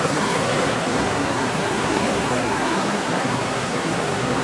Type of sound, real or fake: fake